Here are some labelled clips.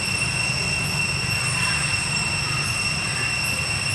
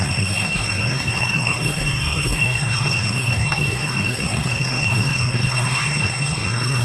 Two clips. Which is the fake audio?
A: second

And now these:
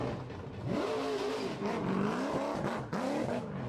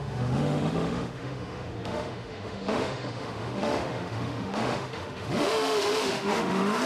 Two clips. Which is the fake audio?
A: second